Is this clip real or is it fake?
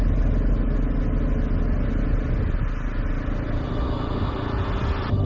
real